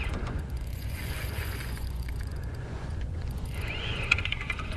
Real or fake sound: fake